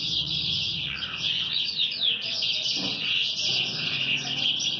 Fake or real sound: fake